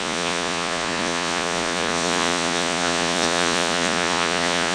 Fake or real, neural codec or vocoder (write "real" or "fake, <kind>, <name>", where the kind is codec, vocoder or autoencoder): fake, vocoder, Vocos